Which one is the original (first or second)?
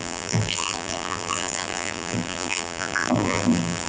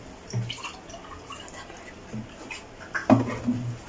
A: second